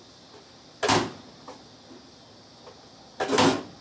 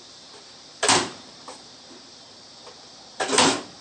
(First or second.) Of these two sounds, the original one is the first